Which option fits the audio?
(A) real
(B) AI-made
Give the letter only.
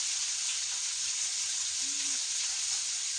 B